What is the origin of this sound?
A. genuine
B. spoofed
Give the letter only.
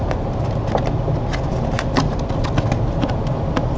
A